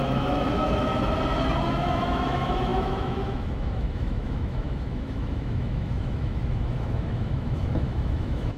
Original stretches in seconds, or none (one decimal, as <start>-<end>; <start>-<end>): 0.9-1.7